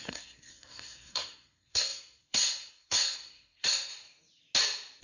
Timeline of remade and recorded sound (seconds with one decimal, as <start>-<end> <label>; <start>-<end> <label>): 0.0-3.9 remade; 3.9-5.0 recorded